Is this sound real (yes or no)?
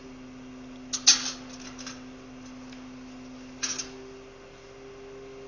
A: yes